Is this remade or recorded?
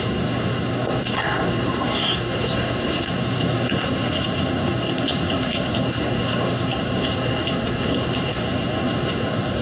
remade